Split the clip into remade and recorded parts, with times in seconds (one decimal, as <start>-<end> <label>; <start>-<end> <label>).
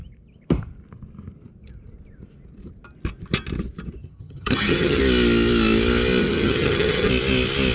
0.0-4.0 recorded; 4.0-5.0 remade; 5.0-6.2 recorded; 6.2-7.1 remade; 7.1-7.7 recorded